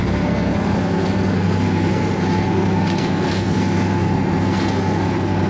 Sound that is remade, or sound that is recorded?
remade